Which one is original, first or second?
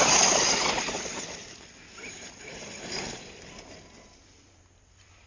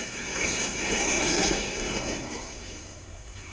first